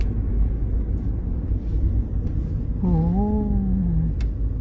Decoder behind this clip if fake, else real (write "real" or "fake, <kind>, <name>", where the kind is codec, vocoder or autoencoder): real